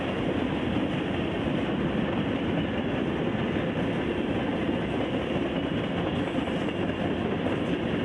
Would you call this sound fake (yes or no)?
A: no